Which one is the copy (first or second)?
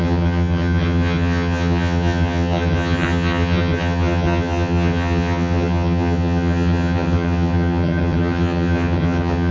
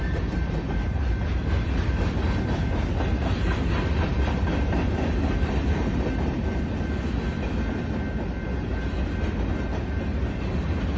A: first